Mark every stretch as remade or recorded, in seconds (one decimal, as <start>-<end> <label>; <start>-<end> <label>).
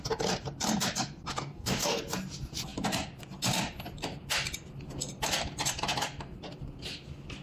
0.0-1.3 recorded; 1.3-2.0 remade; 2.0-7.4 recorded